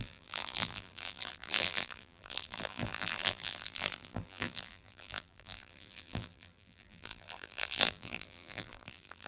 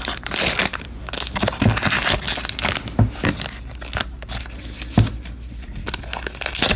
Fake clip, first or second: first